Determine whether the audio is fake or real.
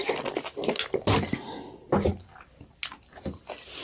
real